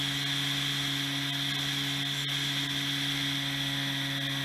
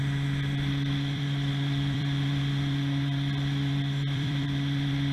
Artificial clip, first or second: second